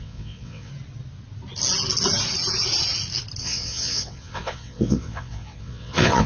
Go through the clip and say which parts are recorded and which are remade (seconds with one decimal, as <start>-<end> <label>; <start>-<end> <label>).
0.0-0.7 remade; 0.7-3.4 recorded; 3.4-6.3 remade